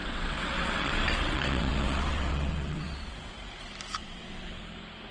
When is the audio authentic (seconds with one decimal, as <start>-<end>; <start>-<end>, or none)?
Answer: 3.1-4.0; 4.6-5.1